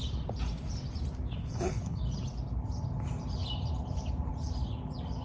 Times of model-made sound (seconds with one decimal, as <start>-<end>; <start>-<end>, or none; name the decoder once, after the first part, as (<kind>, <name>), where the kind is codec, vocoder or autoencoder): 1.4-2.0 (codec, HILCodec)